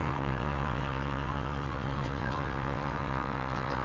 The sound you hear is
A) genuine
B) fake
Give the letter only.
B